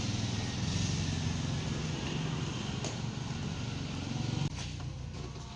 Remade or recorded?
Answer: recorded